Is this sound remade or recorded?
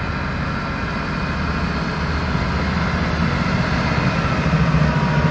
recorded